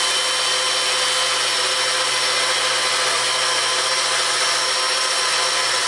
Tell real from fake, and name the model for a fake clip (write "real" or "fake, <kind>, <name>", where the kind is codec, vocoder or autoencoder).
real